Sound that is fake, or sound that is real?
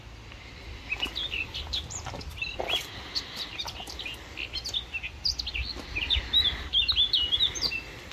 real